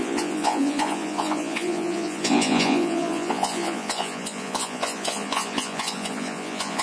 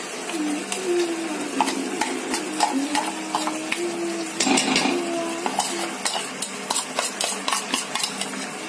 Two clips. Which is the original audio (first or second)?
second